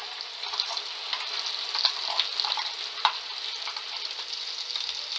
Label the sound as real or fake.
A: real